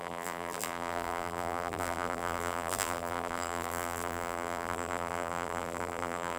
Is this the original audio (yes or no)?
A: no